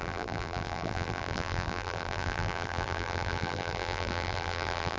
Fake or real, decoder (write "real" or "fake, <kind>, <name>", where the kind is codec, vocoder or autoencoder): fake, vocoder, BigVGAN v2